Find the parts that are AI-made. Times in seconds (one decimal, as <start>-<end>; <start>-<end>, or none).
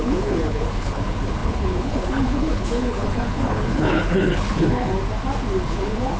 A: 0.0-4.9; 5.6-6.2